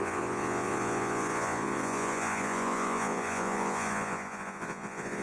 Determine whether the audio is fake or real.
fake